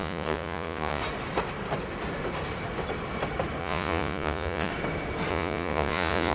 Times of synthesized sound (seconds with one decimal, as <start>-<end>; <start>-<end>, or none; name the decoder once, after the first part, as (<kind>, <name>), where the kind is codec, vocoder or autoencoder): 0.0-1.0 (vocoder, Vocos); 3.6-4.7; 5.3-6.3